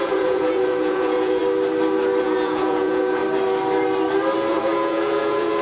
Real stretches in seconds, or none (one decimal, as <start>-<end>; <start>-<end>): 1.4-2.2; 3.2-4.5